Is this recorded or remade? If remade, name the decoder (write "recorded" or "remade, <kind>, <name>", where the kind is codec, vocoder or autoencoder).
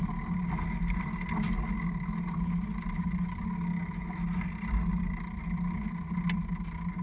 recorded